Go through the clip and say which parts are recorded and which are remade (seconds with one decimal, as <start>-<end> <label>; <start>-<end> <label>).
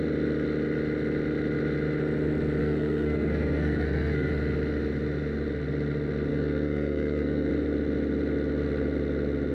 0.0-2.6 recorded; 2.6-4.3 remade; 4.3-6.3 recorded; 6.3-7.5 remade; 7.5-9.5 recorded